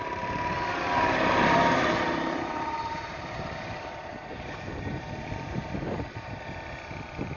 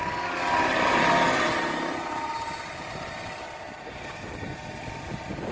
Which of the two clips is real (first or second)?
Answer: second